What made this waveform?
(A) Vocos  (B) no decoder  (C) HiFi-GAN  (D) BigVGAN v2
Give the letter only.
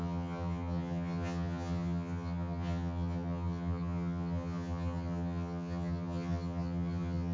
C